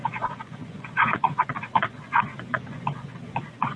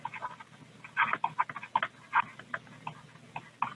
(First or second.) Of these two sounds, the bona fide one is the second